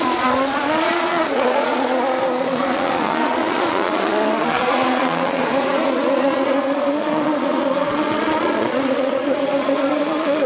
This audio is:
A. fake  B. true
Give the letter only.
A